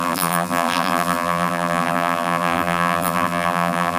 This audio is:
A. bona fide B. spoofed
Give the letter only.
B